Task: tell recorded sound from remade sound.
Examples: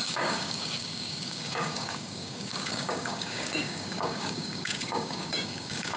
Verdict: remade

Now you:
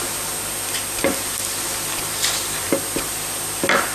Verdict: recorded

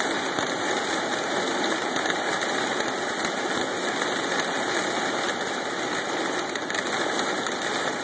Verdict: recorded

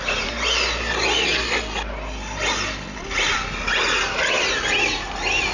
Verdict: recorded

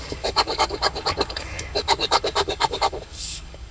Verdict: remade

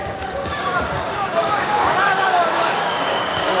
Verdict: remade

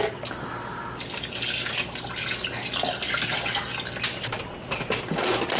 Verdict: recorded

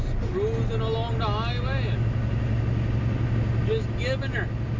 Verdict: recorded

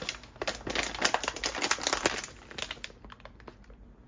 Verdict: recorded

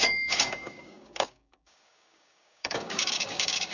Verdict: remade